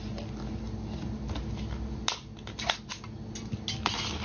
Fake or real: real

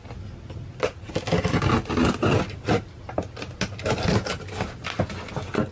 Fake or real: real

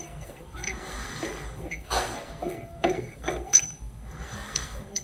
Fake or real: fake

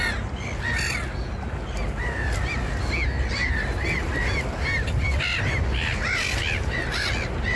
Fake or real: real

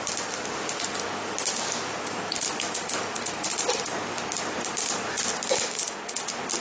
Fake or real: real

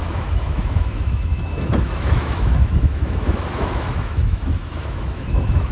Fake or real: fake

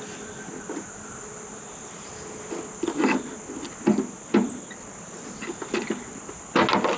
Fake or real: real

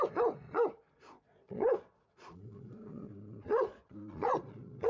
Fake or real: fake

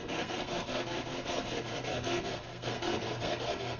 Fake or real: fake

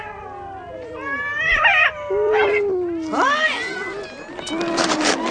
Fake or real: real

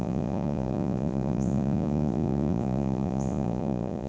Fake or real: fake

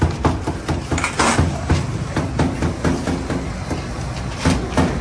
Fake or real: real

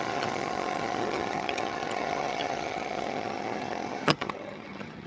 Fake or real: fake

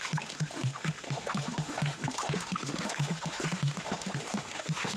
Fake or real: fake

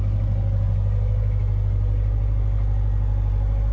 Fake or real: real